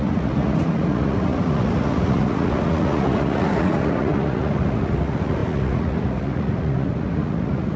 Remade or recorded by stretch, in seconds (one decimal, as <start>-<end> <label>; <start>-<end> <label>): 0.0-7.8 remade